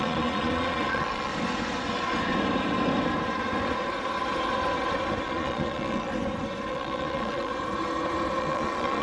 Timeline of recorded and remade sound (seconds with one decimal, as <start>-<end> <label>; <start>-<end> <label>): 0.0-1.3 remade; 1.3-5.2 recorded; 5.2-6.1 remade; 6.1-6.7 recorded; 6.7-7.5 remade; 7.5-8.4 recorded; 8.4-9.0 remade